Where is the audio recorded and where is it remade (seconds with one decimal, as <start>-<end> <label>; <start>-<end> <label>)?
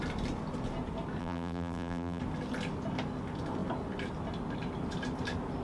0.0-1.2 recorded; 1.2-2.2 remade; 2.2-5.6 recorded